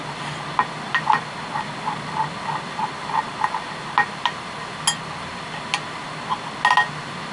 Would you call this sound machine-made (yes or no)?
no